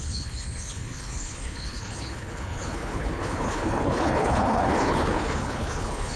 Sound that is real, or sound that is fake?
fake